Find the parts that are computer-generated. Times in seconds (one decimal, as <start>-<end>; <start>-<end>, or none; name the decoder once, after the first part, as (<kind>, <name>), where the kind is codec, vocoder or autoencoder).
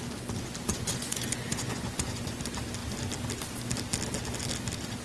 0.7-2.4 (vocoder, Vocos)